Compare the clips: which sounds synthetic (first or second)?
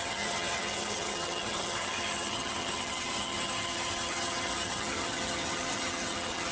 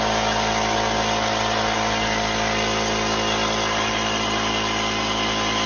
first